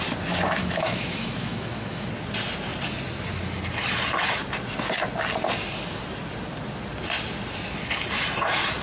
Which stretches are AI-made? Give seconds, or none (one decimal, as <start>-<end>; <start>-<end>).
0.6-2.1